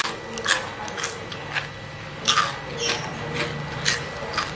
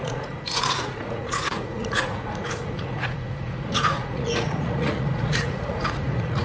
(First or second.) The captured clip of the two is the first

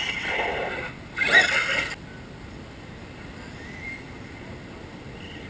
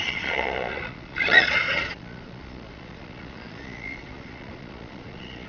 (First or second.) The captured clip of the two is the first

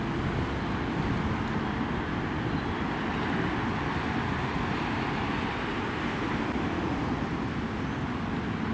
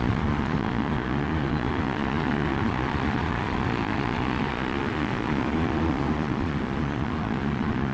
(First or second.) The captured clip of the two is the first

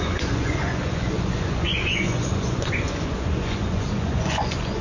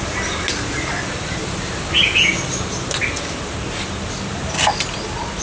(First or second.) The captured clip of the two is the second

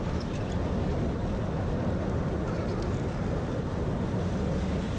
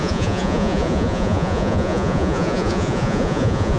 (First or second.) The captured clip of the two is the first